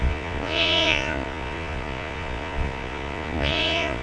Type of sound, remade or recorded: remade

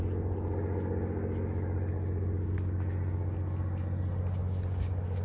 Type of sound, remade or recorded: recorded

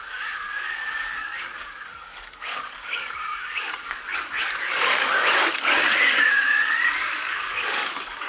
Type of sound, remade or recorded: remade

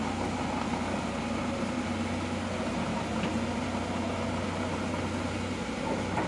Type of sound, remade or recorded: recorded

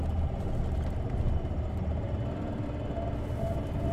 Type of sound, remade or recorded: recorded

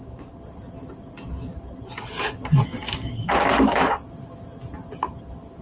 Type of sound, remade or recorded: recorded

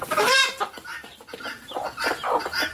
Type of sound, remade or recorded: remade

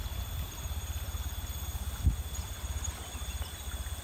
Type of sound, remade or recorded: recorded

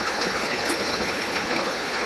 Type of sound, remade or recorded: remade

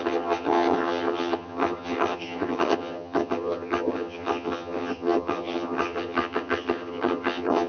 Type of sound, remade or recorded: remade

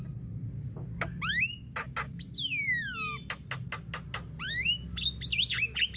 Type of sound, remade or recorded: recorded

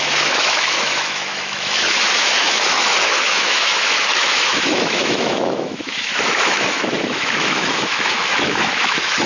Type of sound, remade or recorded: remade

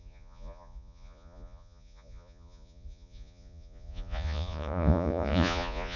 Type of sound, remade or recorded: remade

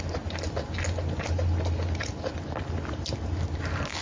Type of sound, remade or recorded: recorded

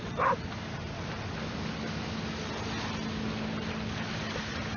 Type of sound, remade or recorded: recorded